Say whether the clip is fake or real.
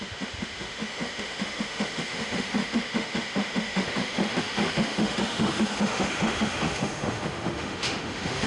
fake